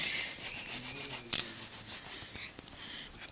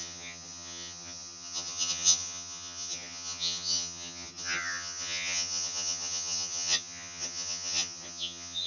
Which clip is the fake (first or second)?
second